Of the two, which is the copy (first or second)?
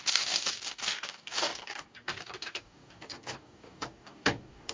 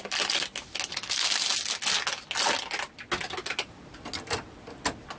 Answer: first